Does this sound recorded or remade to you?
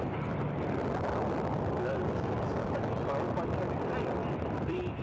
recorded